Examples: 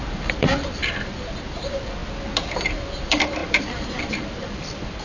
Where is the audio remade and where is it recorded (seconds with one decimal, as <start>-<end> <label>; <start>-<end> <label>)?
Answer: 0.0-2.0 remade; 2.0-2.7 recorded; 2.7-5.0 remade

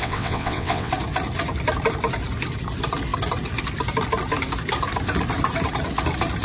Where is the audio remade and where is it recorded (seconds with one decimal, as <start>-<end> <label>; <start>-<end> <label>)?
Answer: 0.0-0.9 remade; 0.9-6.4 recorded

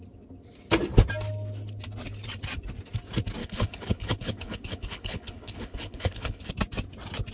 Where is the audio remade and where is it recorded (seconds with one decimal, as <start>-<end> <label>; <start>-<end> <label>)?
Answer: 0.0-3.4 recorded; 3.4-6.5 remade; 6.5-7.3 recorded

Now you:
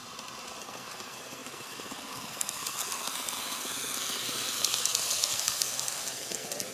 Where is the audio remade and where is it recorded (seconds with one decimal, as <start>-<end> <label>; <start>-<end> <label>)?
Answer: 0.0-0.6 recorded; 0.6-6.7 remade